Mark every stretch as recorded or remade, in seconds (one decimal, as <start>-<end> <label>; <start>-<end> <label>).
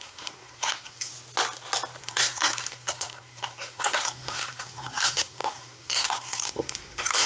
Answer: 0.0-1.1 remade; 1.1-2.0 recorded; 2.0-7.3 remade